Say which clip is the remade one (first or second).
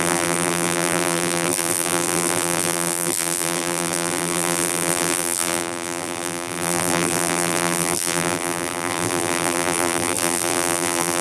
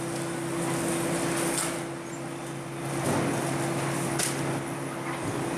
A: first